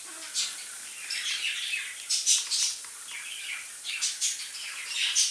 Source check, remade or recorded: recorded